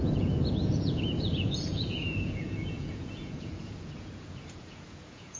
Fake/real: fake